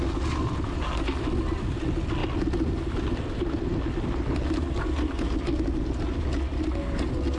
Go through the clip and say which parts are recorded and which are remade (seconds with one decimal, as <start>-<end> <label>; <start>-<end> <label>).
0.0-7.4 recorded